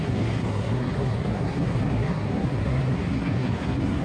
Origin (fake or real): fake